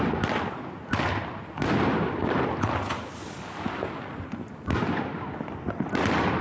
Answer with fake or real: real